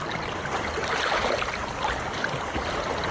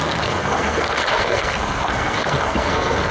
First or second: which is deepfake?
second